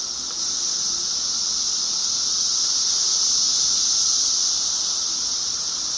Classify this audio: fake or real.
real